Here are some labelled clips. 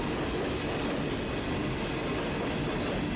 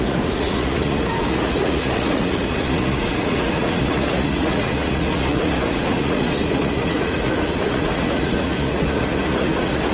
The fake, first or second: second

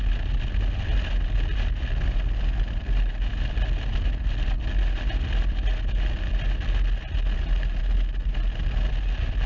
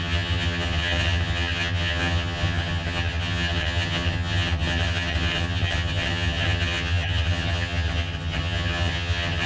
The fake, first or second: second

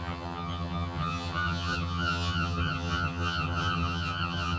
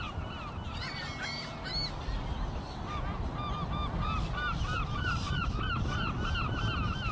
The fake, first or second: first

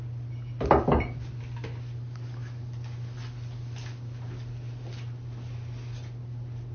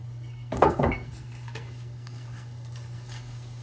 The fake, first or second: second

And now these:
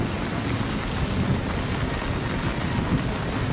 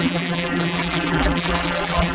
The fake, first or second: second